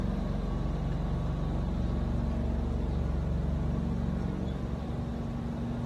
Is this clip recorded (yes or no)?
yes